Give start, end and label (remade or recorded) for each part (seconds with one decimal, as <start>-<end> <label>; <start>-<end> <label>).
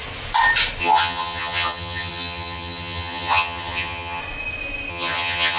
0.0-0.8 recorded; 0.8-4.2 remade; 4.2-4.9 recorded; 4.9-5.6 remade